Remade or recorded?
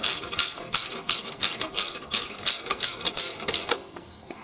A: remade